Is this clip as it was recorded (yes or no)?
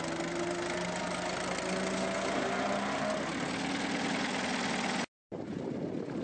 yes